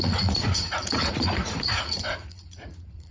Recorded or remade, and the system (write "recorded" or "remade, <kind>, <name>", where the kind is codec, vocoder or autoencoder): remade, vocoder, Vocos